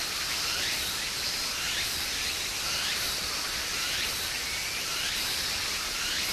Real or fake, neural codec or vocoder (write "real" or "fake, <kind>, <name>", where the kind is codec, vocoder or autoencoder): fake, vocoder, BigVGAN v2